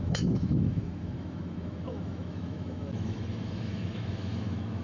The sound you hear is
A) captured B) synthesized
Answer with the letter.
B